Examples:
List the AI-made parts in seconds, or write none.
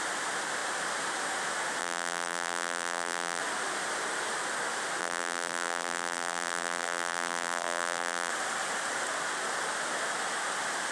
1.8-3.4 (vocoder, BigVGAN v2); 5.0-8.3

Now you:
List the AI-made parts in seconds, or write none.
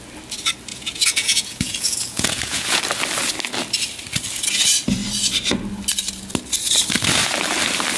0.7-2.8 (vocoder, Vocos)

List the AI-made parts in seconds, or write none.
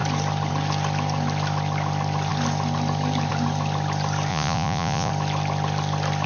4.3-5.1 (vocoder, Vocos)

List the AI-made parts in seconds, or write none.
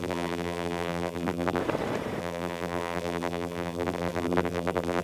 0.0-1.6 (vocoder, BigVGAN v2); 2.2-5.0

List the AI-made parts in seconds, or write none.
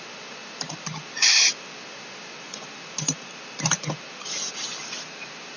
none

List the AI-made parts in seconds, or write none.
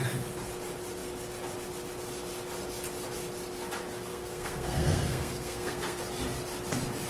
4.1-6.0 (codec, SNAC)